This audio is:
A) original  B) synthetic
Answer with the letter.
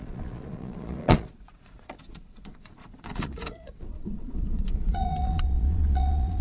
B